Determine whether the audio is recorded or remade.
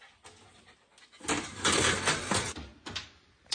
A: recorded